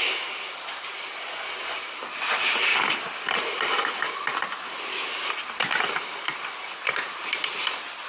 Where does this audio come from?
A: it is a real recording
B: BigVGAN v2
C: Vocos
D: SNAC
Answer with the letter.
A